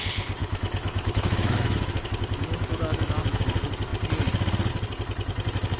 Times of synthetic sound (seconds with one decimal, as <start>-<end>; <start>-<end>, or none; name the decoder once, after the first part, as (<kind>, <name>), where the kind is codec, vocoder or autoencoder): 0.4-3.4 (autoencoder, DAC-VAE)